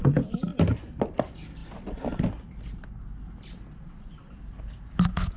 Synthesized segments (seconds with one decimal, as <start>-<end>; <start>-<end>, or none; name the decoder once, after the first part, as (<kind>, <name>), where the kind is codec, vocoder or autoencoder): none